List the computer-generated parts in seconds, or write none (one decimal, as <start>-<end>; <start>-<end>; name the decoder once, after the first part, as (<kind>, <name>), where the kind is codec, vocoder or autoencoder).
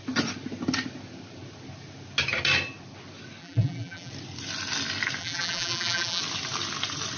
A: 3.4-4.1 (vocoder, BigVGAN v2); 5.2-6.2